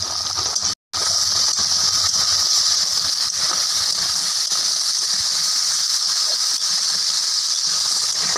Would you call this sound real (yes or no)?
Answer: yes